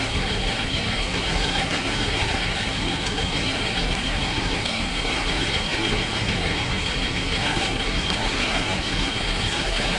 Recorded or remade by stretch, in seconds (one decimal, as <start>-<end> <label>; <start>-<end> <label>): 0.0-10.0 remade